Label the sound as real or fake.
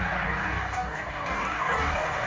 fake